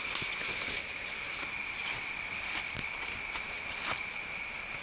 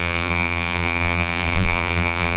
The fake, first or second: second